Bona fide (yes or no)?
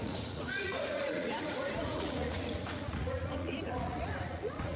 no